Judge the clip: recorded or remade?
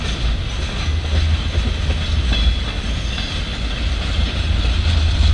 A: recorded